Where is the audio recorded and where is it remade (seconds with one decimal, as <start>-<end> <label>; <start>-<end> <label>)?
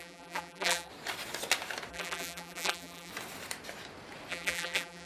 0.0-0.9 remade; 0.9-1.9 recorded; 1.9-3.1 remade; 3.1-4.3 recorded; 4.3-5.1 remade